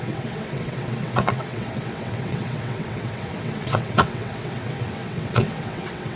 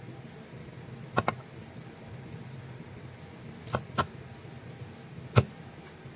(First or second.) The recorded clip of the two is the second